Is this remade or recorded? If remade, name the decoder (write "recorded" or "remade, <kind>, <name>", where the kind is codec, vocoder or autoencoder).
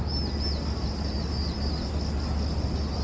recorded